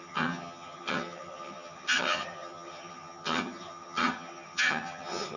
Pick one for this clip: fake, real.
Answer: fake